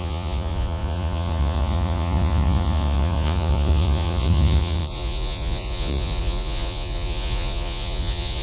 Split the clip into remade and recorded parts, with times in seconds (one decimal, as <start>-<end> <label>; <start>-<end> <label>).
0.0-8.4 remade